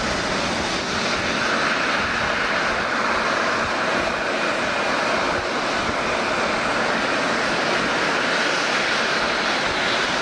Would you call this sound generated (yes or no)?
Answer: no